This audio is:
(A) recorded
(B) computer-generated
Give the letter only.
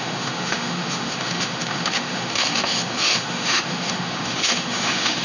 B